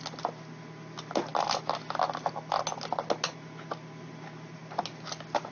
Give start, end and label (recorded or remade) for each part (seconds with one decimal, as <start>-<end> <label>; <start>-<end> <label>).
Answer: 0.0-5.5 recorded